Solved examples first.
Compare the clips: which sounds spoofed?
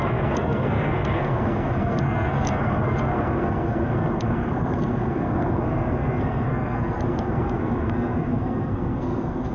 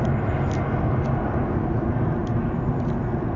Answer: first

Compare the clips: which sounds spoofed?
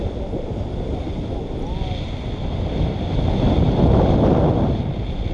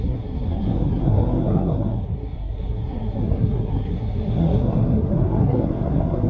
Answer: second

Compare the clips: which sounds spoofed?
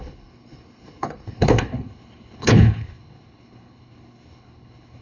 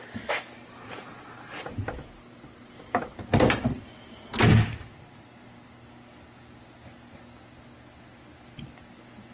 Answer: first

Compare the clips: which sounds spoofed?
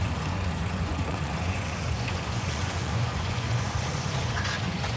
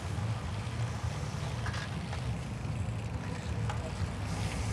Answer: first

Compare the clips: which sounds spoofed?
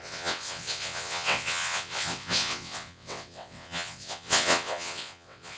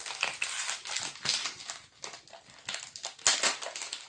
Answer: first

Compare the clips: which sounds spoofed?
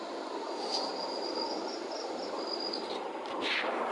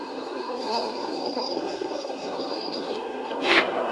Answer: second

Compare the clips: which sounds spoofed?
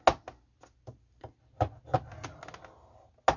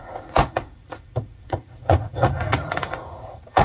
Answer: second